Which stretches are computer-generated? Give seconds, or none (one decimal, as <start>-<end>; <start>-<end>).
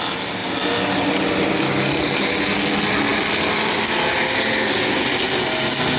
none